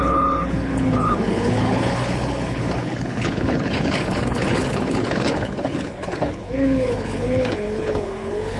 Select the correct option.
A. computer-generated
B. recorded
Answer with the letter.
A